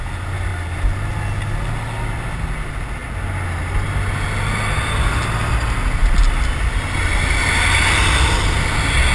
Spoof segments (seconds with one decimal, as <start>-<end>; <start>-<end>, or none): none